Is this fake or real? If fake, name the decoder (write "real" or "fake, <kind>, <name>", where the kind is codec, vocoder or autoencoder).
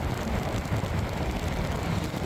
real